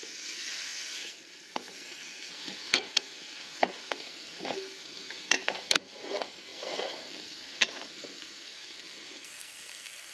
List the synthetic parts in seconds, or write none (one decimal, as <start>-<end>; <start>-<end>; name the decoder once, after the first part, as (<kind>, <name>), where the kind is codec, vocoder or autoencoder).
0.0-10.1 (codec, SNAC)